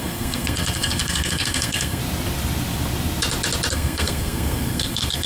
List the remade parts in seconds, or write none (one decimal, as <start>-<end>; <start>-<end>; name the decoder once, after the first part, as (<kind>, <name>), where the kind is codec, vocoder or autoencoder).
0.0-2.0 (codec, SNAC); 3.7-5.3